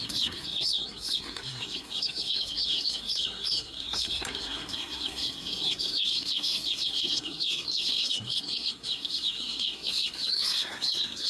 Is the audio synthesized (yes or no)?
yes